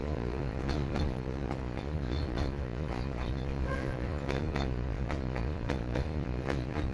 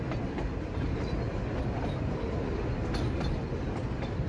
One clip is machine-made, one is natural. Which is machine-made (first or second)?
first